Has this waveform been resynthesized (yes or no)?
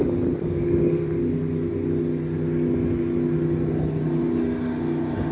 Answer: no